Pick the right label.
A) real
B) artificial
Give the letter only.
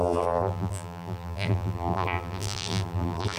B